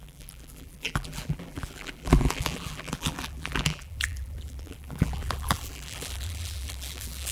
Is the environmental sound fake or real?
fake